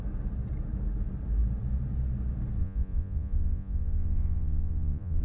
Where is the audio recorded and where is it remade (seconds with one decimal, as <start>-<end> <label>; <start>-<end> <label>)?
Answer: 0.0-2.6 recorded; 2.6-5.2 remade